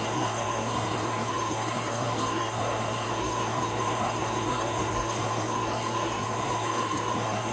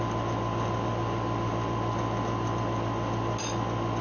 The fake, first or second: first